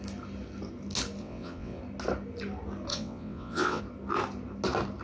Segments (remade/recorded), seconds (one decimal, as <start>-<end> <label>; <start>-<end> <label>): 0.0-1.2 recorded; 1.2-1.8 remade; 1.8-2.9 recorded; 2.9-3.8 remade; 3.8-5.0 recorded